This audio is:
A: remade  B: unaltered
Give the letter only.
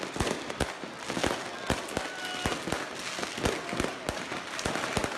B